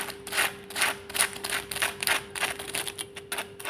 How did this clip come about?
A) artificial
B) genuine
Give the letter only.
B